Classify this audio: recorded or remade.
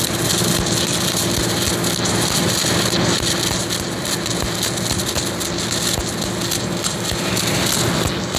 recorded